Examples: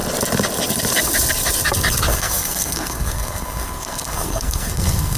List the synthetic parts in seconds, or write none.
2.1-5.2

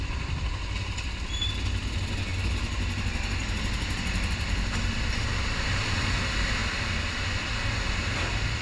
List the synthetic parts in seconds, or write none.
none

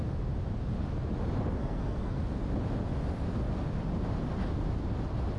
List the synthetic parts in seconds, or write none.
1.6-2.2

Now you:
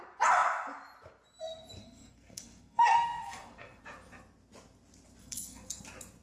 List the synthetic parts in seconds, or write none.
1.8-3.8; 5.2-5.8

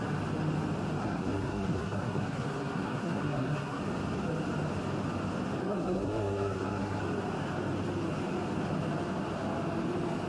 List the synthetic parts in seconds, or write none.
1.0-3.8; 5.6-7.0